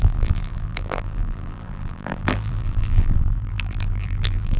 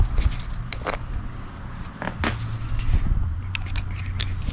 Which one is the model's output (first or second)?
first